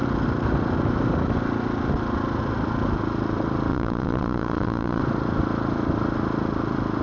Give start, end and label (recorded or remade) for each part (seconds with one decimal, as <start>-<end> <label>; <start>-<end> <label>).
0.0-3.7 recorded; 3.7-5.0 remade; 5.0-7.0 recorded